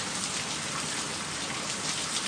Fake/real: real